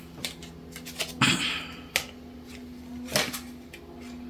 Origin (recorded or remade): recorded